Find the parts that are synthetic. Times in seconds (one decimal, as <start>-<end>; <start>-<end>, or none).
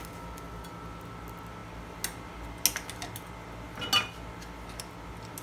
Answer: none